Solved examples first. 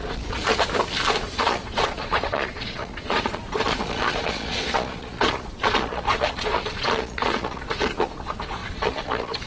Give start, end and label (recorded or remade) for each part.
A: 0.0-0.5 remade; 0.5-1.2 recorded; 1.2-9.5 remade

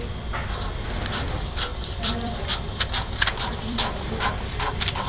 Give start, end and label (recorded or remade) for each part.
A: 0.0-1.7 recorded; 1.7-5.1 remade

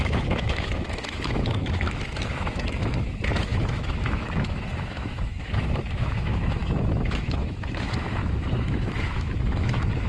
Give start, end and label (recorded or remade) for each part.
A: 0.0-10.1 remade

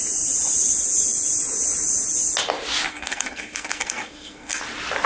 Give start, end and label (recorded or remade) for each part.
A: 0.0-2.9 recorded; 2.9-4.6 remade; 4.6-5.1 recorded

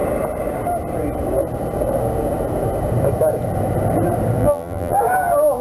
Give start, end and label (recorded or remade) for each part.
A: 0.0-4.4 recorded; 4.4-5.0 remade; 5.0-5.6 recorded

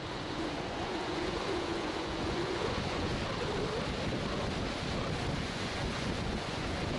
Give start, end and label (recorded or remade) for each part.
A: 0.0-3.1 remade; 3.1-5.4 recorded; 5.4-7.0 remade